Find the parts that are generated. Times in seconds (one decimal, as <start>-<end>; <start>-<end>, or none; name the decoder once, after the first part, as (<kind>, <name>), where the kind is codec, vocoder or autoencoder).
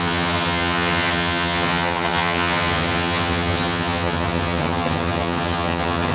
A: 0.0-6.1 (vocoder, HiFi-GAN)